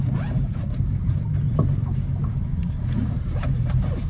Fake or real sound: fake